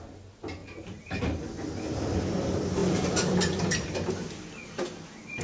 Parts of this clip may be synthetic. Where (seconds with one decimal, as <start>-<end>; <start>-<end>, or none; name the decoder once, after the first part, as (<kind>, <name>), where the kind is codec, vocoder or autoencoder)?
0.6-1.2 (vocoder, BigVGAN v2)